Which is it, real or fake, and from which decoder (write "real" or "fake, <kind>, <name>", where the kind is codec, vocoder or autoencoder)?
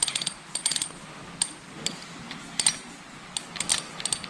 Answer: real